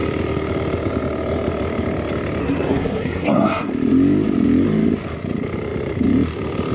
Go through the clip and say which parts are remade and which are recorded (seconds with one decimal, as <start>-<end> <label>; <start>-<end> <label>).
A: 0.0-2.4 recorded; 2.4-3.7 remade; 3.7-6.7 recorded